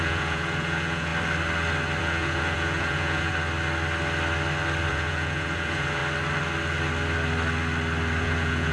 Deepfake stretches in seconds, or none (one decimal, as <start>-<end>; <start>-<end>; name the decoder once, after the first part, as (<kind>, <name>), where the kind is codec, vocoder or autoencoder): 0.0-1.1 (vocoder, Vocos); 2.0-3.3; 4.9-6.0; 8.2-8.7